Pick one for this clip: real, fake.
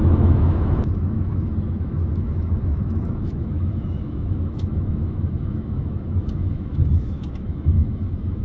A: fake